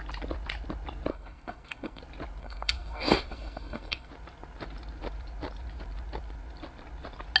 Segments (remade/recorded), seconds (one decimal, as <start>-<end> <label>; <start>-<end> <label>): 0.0-1.1 recorded; 1.1-2.0 remade; 2.0-2.4 recorded; 2.4-4.1 remade; 4.1-7.4 recorded